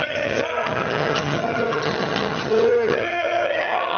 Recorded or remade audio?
remade